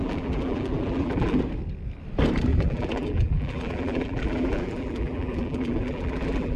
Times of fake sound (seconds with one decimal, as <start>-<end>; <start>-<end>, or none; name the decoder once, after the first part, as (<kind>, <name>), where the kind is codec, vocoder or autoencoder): 0.0-1.4 (vocoder, BigVGAN v2); 2.5-6.6